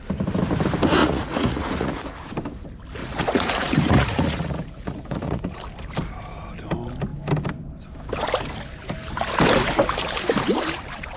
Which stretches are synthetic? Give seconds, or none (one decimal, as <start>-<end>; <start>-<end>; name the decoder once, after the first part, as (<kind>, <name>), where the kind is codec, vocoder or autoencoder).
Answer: 1.0-1.9 (vocoder, Vocos); 3.0-5.6